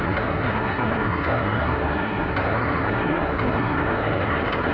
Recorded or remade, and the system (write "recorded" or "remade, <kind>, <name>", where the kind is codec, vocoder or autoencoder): remade, codec, SNAC